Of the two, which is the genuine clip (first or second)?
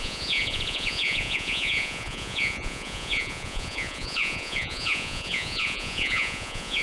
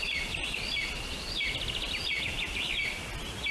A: second